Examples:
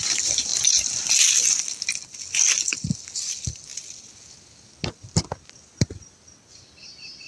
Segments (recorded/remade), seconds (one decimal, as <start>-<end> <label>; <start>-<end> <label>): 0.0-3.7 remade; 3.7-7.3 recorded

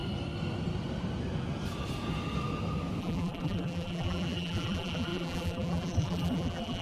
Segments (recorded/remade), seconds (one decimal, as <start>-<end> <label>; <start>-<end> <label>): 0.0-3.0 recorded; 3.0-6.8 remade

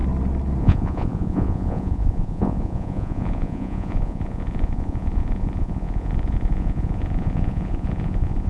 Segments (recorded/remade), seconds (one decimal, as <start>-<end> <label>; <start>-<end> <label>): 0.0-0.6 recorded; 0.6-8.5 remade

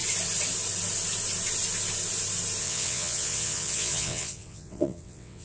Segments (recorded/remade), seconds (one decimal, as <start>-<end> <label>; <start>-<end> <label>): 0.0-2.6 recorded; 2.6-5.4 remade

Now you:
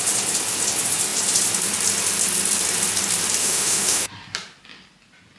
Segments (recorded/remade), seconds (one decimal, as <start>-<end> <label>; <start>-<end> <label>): 0.0-3.4 recorded; 3.4-4.1 remade; 4.1-5.4 recorded

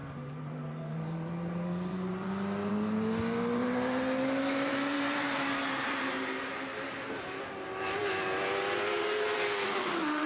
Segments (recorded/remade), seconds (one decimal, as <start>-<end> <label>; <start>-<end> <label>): 0.0-2.7 remade; 2.7-3.6 recorded; 3.6-8.0 remade; 8.0-10.3 recorded

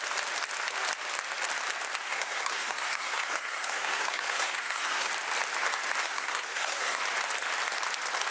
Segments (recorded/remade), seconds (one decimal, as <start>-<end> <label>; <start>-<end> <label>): 0.0-2.1 recorded; 2.1-5.1 remade; 5.1-6.0 recorded; 6.0-7.0 remade; 7.0-8.3 recorded